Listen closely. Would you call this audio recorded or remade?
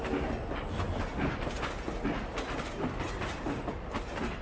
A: recorded